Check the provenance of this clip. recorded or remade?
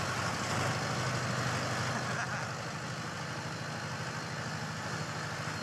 recorded